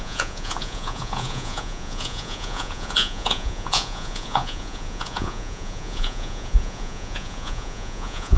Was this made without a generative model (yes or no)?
no